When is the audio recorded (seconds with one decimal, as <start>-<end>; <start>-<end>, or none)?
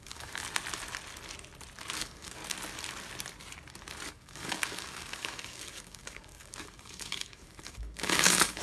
0.4-2.0; 2.4-4.1